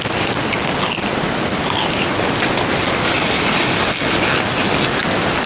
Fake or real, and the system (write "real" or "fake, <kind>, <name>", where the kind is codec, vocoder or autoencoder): real